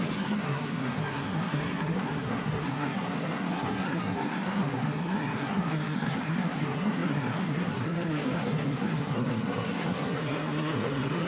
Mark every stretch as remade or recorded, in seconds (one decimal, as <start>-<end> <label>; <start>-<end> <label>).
0.0-11.3 remade